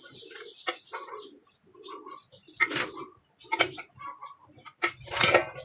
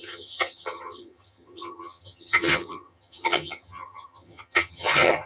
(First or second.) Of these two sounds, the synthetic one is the second